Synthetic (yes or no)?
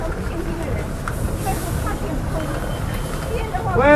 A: no